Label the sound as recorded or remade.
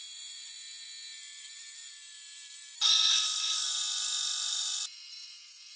recorded